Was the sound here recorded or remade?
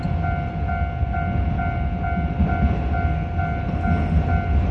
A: recorded